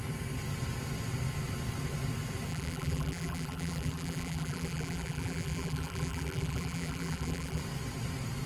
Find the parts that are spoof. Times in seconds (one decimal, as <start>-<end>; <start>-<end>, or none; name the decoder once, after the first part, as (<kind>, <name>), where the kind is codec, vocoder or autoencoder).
2.5-7.6 (vocoder, BigVGAN v2)